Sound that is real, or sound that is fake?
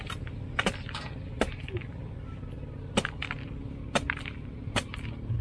real